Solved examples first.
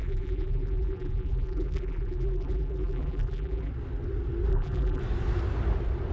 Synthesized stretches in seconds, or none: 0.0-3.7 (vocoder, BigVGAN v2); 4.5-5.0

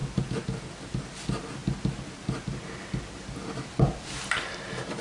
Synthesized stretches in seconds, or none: 0.0-1.6 (vocoder, BigVGAN v2); 4.6-5.0

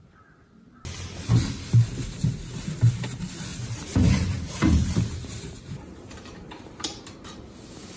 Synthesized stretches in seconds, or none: 3.5-7.4 (vocoder, BigVGAN v2)

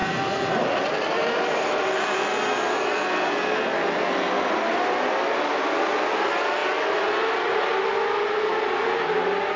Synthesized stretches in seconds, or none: 0.0-1.8 (vocoder, BigVGAN v2)

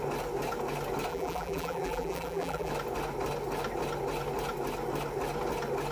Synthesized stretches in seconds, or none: 1.1-2.7 (vocoder, BigVGAN v2)